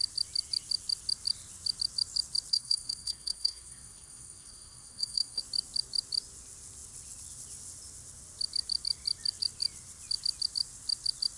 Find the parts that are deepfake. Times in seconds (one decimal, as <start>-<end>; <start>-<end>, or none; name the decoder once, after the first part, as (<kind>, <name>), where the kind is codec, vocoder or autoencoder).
2.5-5.4 (codec, SNAC)